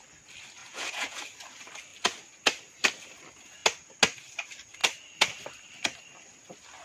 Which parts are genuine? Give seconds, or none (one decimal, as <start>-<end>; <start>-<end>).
0.0-0.6; 1.2-6.8